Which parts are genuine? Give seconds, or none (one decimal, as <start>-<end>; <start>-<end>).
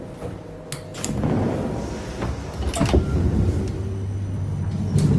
0.0-5.2